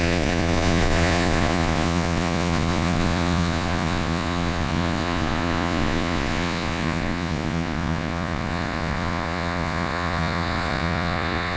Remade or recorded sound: remade